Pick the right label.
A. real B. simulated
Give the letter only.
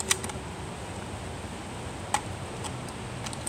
A